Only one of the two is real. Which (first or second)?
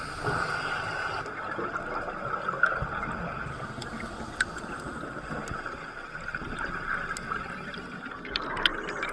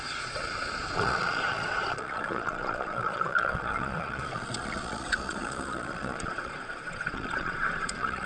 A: first